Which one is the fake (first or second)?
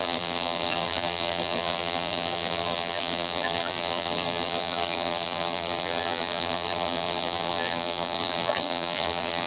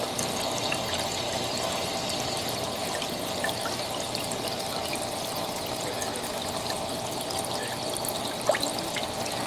first